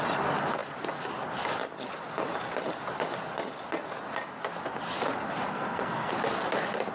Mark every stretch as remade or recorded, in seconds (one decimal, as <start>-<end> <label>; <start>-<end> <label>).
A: 0.0-5.5 recorded; 5.5-6.1 remade; 6.1-6.9 recorded